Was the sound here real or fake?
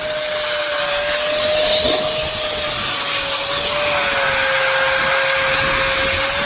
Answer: real